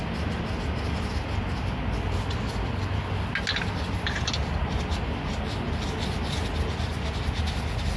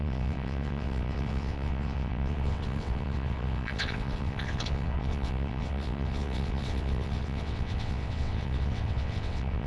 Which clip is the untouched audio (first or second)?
first